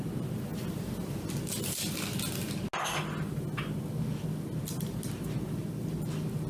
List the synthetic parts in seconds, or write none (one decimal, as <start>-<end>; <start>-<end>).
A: none

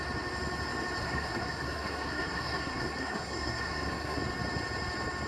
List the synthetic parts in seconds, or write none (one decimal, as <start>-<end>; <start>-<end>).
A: 1.0-4.2

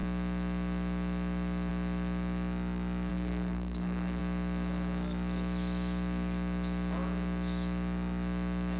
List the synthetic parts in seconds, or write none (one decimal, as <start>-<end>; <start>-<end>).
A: 3.1-4.2

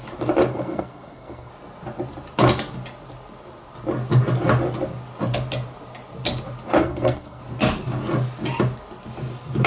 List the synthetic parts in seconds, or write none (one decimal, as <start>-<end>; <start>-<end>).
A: 0.5-1.5; 6.8-7.4

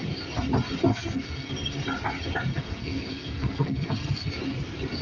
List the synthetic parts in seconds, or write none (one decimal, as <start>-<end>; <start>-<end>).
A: 0.9-1.5; 2.5-4.3

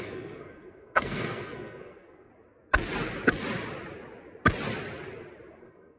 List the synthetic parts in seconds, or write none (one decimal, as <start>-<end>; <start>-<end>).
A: 0.0-2.3; 5.6-6.0

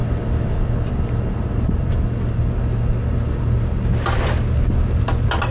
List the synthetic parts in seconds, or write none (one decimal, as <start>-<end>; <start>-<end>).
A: none

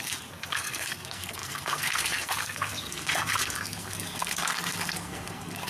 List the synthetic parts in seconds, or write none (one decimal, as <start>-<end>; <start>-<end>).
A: 0.0-5.7